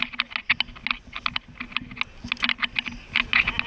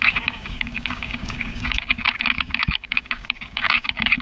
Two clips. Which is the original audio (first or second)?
first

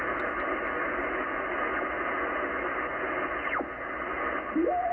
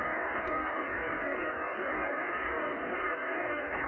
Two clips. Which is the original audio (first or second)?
first